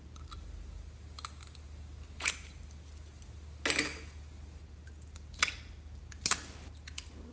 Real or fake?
real